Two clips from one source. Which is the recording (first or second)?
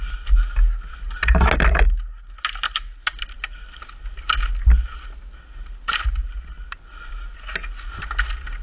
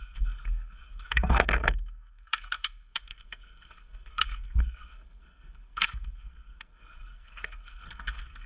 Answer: first